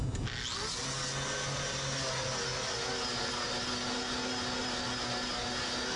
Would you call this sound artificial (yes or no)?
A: no